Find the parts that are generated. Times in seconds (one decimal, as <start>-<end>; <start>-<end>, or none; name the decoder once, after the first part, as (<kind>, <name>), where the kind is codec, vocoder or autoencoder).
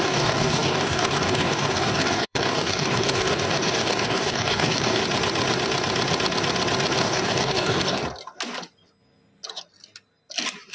0.0-5.0 (codec, DAC); 7.0-8.0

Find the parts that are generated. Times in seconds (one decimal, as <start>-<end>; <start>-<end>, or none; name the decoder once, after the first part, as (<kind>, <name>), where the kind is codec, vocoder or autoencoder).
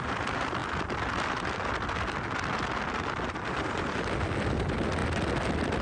none